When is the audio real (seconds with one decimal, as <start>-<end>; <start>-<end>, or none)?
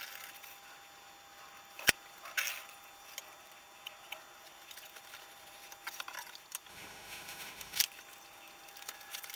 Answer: 0.0-6.7; 7.8-9.4